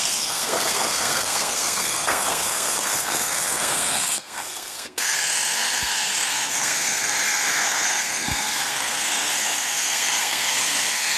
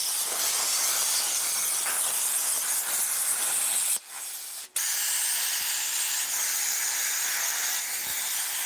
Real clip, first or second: second